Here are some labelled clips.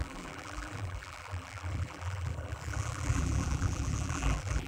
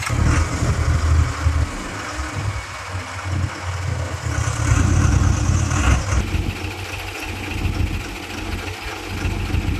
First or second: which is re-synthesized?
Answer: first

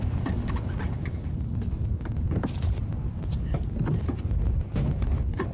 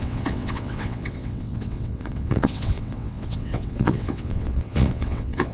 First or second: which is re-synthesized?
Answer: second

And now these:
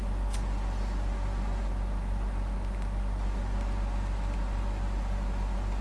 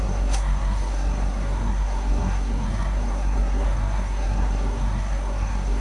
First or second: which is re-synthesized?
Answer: second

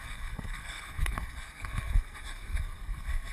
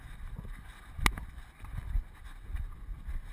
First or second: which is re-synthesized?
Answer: first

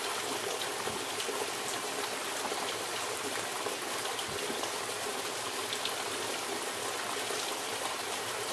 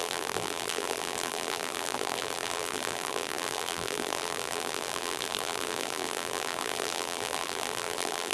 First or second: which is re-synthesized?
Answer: second